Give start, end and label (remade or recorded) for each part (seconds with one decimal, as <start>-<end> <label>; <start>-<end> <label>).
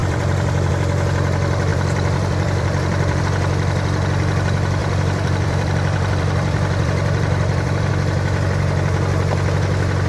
0.0-0.7 remade; 0.7-1.7 recorded; 1.7-3.2 remade; 3.2-4.8 recorded; 4.8-7.9 remade; 7.9-10.1 recorded